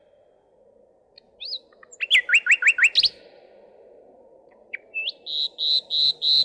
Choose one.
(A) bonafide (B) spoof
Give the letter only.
A